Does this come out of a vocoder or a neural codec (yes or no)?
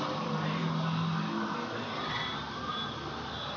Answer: no